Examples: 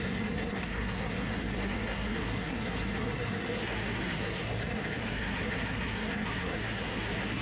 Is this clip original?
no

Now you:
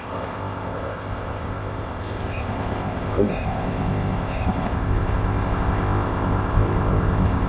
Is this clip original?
no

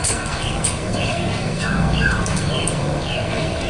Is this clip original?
no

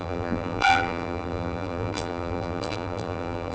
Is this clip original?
no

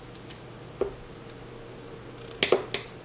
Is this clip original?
yes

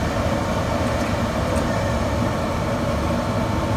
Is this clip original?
yes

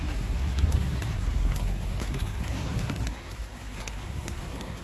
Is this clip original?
no